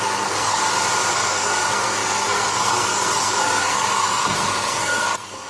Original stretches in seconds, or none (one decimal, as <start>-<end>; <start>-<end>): 0.6-1.1